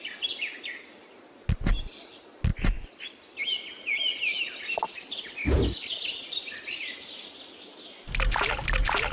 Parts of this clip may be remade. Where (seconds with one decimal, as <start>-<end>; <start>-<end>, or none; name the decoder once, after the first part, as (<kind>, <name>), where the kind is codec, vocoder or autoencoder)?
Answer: none